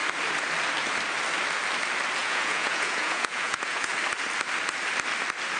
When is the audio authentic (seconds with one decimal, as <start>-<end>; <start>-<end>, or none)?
0.0-2.2; 3.9-5.6